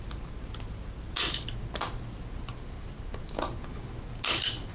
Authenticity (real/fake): real